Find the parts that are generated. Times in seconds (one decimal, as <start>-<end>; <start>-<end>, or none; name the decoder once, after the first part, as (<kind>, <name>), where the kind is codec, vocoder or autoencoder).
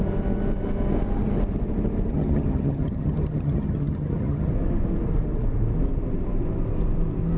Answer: 2.1-4.5 (vocoder, HiFi-GAN)